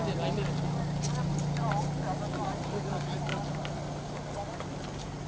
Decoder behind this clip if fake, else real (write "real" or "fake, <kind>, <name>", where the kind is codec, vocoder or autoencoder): real